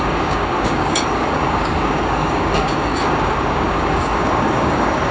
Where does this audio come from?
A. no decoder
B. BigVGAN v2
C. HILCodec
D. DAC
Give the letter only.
D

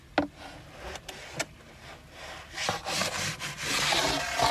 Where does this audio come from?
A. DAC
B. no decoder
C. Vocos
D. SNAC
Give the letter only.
B